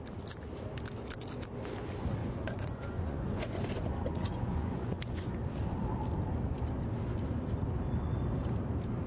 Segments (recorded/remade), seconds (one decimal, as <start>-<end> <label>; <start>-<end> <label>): 0.0-2.2 recorded; 2.2-5.3 remade; 5.3-9.1 recorded

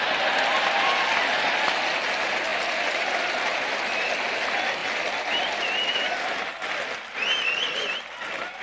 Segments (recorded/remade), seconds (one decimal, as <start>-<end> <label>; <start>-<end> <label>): 0.0-2.5 recorded; 2.5-3.4 remade; 3.4-4.8 recorded; 4.8-6.1 remade; 6.1-8.6 recorded